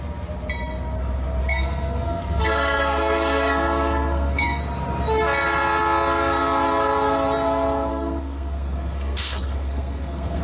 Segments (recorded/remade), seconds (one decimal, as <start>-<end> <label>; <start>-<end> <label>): 0.0-1.4 recorded; 1.4-4.6 remade; 4.6-7.9 recorded; 7.9-10.4 remade